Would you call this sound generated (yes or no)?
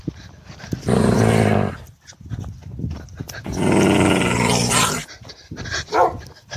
no